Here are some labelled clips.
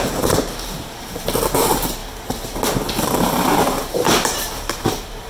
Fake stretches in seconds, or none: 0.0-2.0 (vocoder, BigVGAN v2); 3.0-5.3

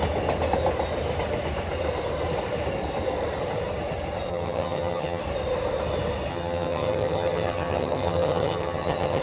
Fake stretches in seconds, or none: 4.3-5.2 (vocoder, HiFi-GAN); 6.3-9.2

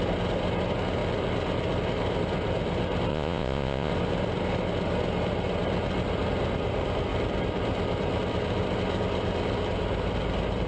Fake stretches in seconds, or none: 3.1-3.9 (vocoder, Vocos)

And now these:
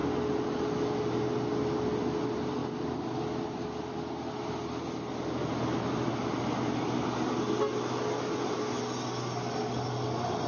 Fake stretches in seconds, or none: none